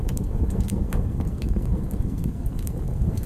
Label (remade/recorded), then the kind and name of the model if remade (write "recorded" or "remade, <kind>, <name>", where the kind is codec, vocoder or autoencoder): remade, codec, SNAC